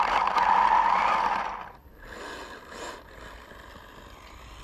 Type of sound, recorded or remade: recorded